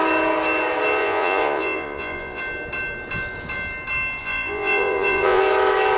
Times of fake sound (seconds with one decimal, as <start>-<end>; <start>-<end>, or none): 1.0-2.4; 4.2-5.4